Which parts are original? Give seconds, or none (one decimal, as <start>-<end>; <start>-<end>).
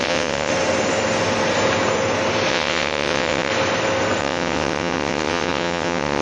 0.5-2.5; 3.5-4.2